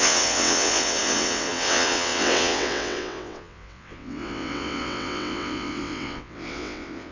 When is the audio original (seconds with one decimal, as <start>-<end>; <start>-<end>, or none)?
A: none